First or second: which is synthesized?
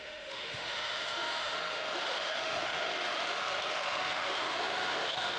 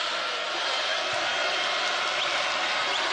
first